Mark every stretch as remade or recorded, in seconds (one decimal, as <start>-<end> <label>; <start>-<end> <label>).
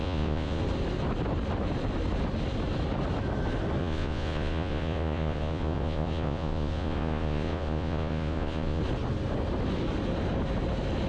0.0-0.6 remade; 0.6-3.8 recorded; 3.8-8.8 remade; 8.8-11.1 recorded